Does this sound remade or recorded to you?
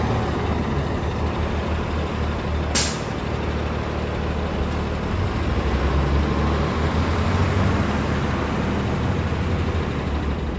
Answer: recorded